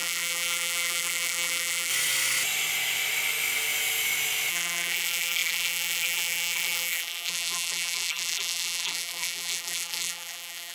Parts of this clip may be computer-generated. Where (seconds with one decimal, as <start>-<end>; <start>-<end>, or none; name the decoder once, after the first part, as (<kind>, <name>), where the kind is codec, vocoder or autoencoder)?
0.0-1.9 (vocoder, BigVGAN v2); 4.5-10.7